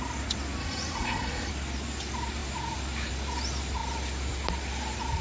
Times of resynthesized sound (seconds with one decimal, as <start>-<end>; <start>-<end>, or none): 0.6-1.5